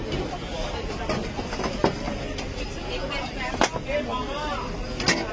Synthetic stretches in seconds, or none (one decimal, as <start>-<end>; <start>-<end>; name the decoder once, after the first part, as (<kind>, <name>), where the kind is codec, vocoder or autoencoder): 0.5-3.2 (vocoder, BigVGAN v2)